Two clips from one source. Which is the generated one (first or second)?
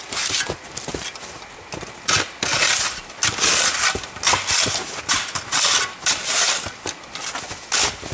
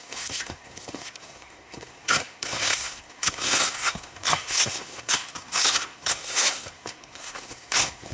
second